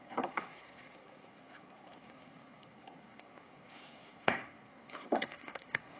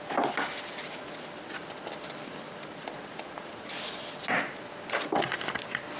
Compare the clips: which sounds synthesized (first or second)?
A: first